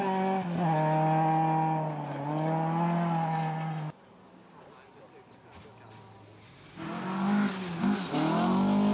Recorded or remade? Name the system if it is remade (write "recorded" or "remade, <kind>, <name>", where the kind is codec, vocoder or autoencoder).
recorded